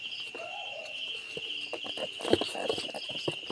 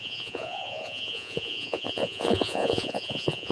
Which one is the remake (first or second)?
second